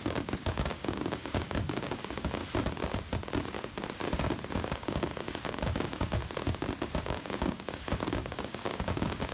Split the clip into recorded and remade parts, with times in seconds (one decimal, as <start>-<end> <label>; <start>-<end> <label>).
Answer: 0.0-2.4 remade; 2.4-4.5 recorded; 4.5-6.2 remade; 6.2-7.0 recorded; 7.0-9.3 remade